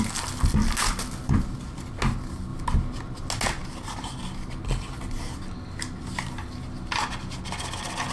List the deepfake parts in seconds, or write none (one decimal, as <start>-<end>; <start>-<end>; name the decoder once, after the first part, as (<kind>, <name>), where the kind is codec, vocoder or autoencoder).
none